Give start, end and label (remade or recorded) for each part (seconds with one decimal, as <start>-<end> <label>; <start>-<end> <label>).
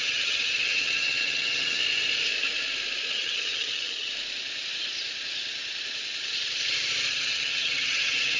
0.0-1.8 remade; 1.8-3.1 recorded; 3.1-4.1 remade; 4.1-7.1 recorded; 7.1-8.4 remade